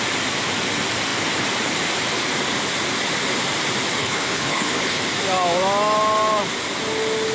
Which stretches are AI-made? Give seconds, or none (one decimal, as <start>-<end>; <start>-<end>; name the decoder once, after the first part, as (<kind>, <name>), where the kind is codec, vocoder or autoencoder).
4.0-5.0 (codec, HILCodec)